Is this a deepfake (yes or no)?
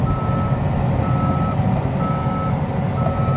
no